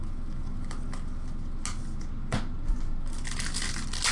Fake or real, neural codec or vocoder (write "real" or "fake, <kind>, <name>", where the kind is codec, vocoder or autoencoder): real